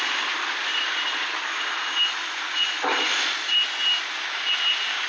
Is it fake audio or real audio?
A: real